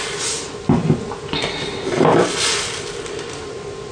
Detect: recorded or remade recorded